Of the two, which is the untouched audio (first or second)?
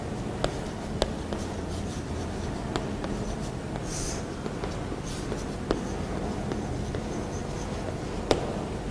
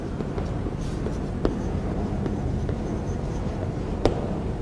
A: first